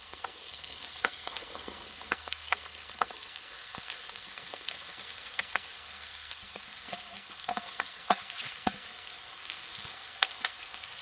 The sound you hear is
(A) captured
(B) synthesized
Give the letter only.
B